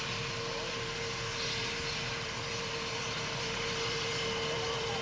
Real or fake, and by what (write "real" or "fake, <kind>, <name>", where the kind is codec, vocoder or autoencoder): real